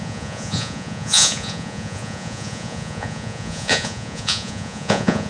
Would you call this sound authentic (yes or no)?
no